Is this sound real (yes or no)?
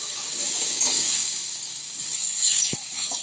no